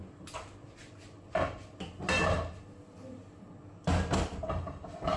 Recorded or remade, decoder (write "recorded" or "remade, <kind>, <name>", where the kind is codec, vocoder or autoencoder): recorded